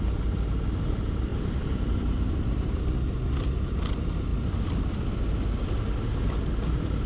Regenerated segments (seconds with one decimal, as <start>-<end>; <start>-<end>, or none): 1.3-2.8